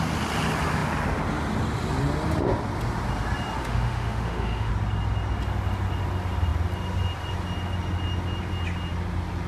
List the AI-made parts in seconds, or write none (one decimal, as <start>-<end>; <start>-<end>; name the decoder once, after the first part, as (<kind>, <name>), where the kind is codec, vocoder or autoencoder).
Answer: 3.6-4.7 (autoencoder, DAC-VAE)